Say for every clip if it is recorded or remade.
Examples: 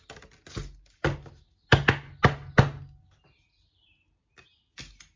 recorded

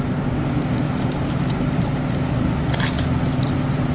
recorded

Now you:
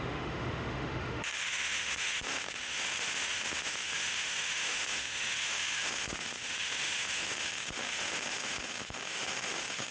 remade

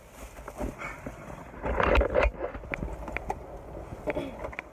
recorded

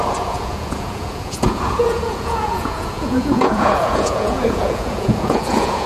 remade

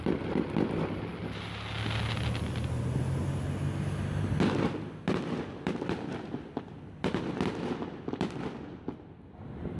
recorded